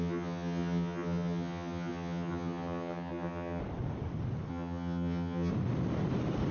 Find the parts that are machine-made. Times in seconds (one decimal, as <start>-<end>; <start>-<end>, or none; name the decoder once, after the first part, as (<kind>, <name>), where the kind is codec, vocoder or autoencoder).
0.0-3.6 (vocoder, HiFi-GAN); 4.5-5.5